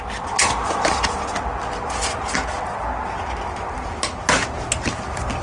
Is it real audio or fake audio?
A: real